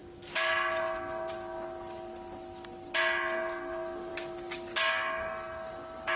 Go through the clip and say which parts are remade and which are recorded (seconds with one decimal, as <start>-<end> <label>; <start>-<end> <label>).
0.0-6.2 recorded